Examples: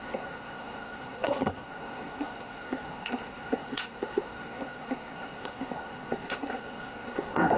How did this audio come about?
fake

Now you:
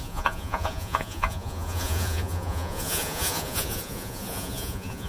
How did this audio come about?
fake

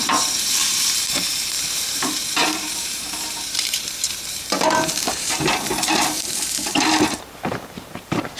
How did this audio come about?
fake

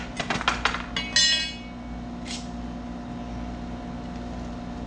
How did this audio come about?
real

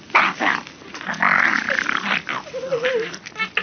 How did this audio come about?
real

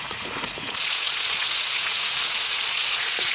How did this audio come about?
fake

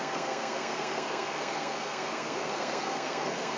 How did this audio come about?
fake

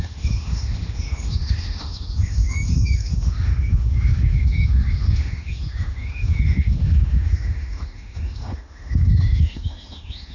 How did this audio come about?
fake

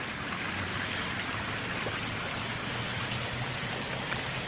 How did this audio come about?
real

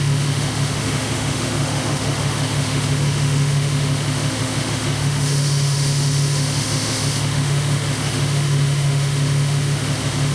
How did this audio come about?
fake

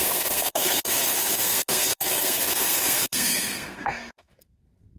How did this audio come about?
fake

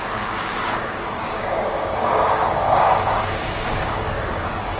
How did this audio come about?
fake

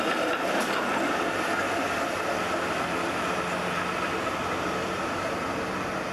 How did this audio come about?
real